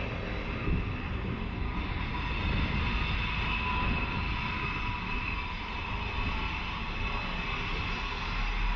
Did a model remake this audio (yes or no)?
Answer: no